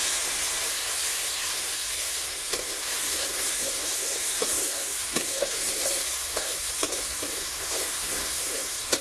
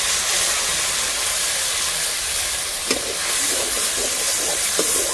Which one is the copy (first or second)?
first